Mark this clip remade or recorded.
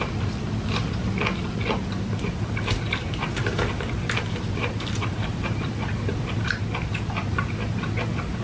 recorded